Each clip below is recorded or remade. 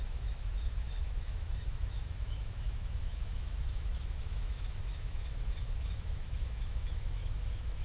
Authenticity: remade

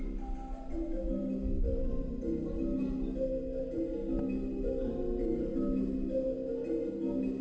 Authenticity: recorded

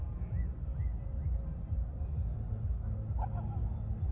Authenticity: recorded